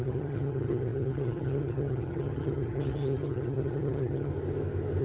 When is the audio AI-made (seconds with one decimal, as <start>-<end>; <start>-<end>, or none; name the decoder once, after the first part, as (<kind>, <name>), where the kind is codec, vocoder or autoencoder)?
0.0-4.3 (vocoder, HiFi-GAN)